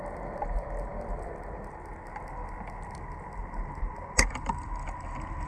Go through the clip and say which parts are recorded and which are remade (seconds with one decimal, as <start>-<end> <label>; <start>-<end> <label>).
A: 0.0-5.5 recorded